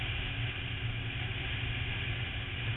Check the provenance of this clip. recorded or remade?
recorded